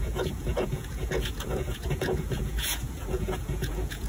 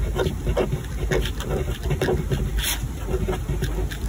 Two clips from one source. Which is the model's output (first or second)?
first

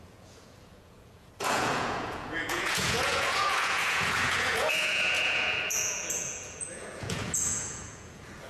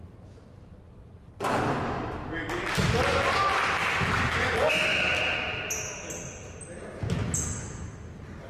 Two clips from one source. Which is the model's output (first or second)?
first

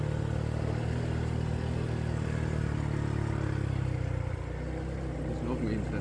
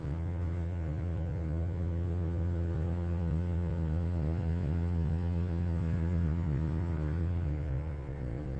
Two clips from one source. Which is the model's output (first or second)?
second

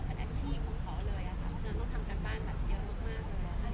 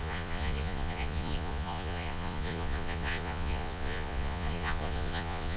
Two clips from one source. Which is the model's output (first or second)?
second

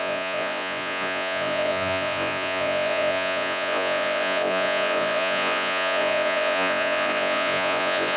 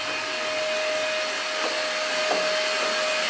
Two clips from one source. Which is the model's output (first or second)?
first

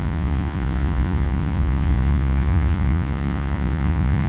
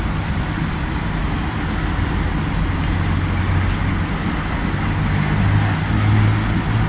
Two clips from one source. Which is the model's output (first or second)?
first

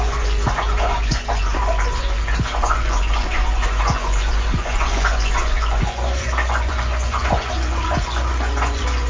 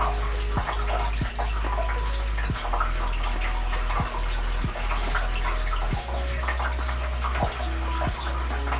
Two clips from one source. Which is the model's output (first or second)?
first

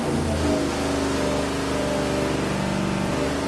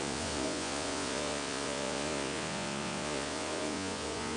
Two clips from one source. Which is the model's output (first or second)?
second